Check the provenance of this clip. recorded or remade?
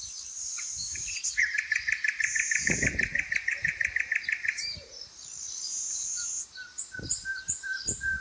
remade